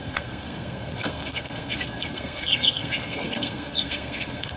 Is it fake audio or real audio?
fake